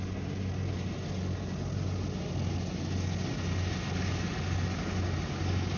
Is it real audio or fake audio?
real